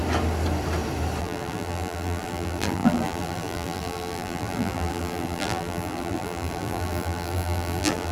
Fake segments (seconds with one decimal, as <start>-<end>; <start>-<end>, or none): 1.2-8.1